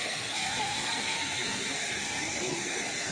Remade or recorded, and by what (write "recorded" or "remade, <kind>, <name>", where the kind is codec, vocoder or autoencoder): remade, codec, SNAC